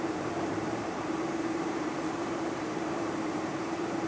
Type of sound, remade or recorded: remade